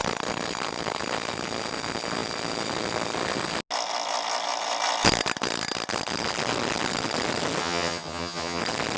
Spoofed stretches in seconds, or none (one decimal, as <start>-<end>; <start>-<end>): 7.6-8.6